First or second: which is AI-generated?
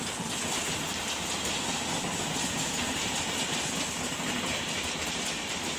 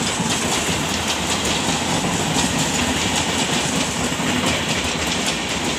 first